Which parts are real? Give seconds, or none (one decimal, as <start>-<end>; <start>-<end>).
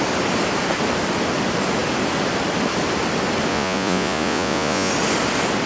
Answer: 0.0-3.5; 4.9-5.7